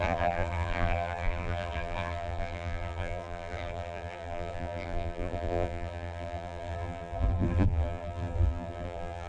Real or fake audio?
fake